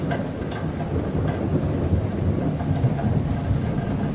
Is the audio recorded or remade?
recorded